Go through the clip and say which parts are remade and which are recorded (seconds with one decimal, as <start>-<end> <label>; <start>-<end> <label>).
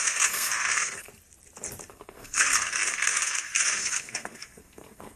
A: 0.0-1.1 remade; 1.1-1.9 recorded; 1.9-5.2 remade